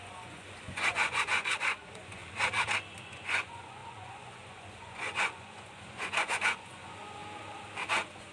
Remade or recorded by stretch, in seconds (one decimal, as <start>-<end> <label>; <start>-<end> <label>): 0.0-2.2 remade; 2.2-3.0 recorded; 3.0-7.2 remade; 7.2-7.9 recorded; 7.9-8.3 remade